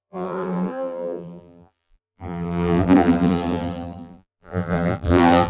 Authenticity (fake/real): fake